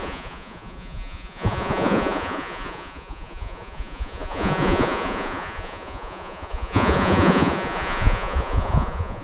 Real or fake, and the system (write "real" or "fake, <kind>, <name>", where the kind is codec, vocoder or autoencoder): fake, vocoder, Vocos